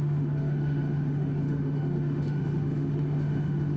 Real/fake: fake